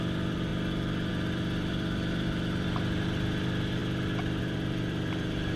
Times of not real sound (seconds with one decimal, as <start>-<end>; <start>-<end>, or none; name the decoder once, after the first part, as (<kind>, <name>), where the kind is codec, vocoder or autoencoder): 0.0-0.5 (vocoder, BigVGAN v2); 1.1-3.8; 4.4-5.6